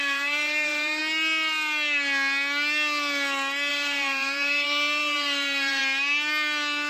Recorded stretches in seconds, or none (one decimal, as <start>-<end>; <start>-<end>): 1.0-3.7; 5.8-6.9